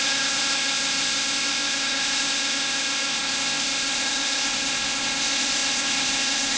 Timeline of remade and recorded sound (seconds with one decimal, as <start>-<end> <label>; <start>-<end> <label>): 0.0-6.6 remade